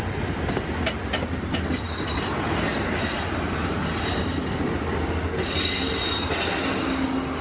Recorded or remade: recorded